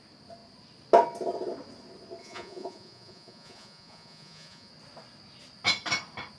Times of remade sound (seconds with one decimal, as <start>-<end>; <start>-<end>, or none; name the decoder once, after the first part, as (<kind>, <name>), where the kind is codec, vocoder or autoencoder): 2.2-4.7 (vocoder, Vocos)